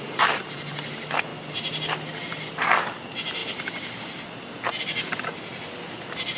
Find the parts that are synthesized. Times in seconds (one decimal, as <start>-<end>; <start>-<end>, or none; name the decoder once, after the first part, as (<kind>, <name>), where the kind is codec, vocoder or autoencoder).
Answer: none